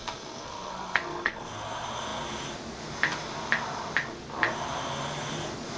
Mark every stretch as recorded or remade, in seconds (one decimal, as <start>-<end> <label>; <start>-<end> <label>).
0.0-1.5 remade; 1.5-5.8 recorded